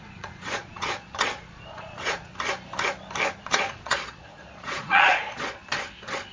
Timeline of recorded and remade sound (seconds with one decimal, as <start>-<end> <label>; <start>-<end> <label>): 0.0-2.3 remade; 2.3-3.4 recorded; 3.4-6.3 remade